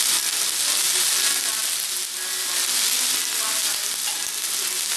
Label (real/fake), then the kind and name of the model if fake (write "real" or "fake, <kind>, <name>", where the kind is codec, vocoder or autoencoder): real